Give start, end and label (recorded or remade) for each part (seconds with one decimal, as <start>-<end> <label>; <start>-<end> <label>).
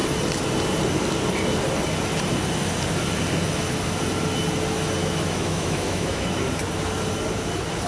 0.0-5.0 recorded; 5.0-6.4 remade; 6.4-7.9 recorded